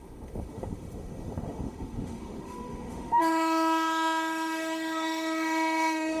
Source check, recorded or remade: remade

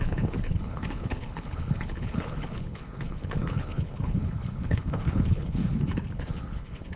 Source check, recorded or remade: remade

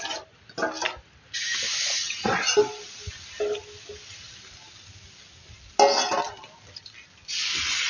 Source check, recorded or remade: recorded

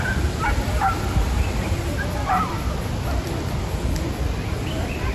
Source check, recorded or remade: remade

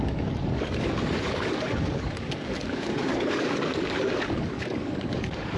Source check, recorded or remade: remade